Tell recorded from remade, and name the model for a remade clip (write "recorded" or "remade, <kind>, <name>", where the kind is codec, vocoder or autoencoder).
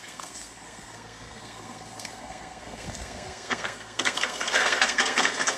remade, codec, SNAC